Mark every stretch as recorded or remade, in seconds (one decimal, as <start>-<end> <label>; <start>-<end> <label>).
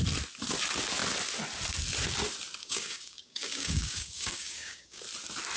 0.0-2.6 recorded; 2.6-5.0 remade; 5.0-5.6 recorded